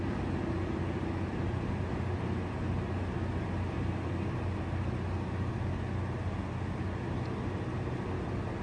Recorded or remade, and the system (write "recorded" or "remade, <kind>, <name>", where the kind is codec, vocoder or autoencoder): recorded